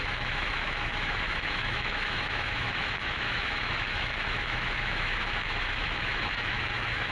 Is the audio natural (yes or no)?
no